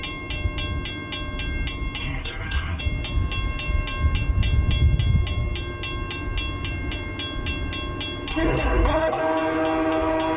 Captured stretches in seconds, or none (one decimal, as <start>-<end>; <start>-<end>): 0.0-2.0; 2.8-8.3; 9.2-10.4